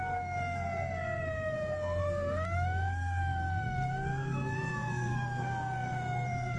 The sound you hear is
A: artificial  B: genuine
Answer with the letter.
A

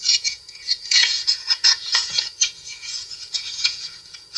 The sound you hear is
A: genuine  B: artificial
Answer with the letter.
B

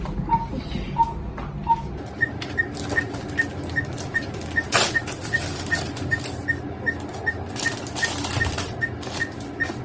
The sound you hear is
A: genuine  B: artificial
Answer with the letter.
A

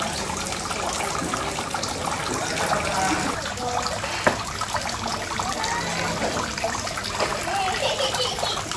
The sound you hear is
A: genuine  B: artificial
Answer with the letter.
A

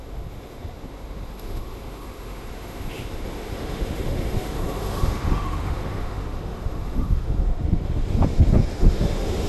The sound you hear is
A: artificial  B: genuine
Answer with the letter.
A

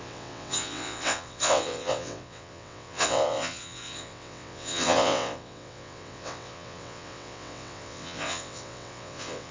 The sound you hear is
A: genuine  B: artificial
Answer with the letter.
B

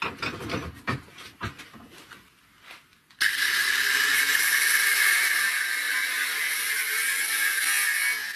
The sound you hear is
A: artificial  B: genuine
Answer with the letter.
B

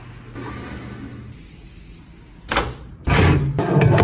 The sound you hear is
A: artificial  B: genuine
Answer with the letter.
B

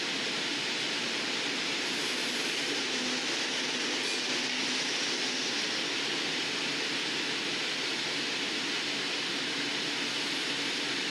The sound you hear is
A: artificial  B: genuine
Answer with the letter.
B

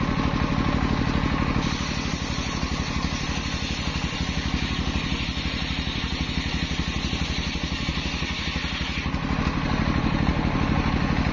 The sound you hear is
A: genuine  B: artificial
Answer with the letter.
A